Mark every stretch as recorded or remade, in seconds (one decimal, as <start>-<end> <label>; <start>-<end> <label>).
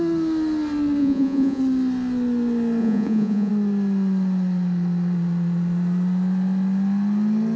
0.0-1.0 recorded; 1.0-1.6 remade; 1.6-2.8 recorded; 2.8-3.5 remade; 3.5-7.6 recorded